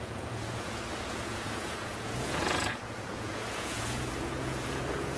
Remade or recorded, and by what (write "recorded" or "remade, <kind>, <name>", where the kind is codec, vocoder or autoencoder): remade, vocoder, Vocos